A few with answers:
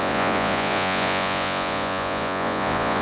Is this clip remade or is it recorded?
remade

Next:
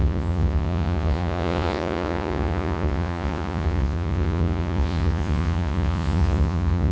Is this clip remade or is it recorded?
remade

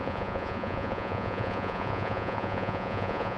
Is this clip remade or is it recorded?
remade